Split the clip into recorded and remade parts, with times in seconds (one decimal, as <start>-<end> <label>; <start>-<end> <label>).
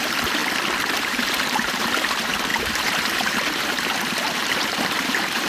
0.0-0.4 remade; 0.4-0.9 recorded; 0.9-5.5 remade